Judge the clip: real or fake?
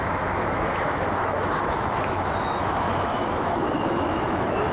fake